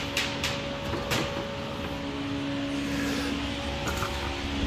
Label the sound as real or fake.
real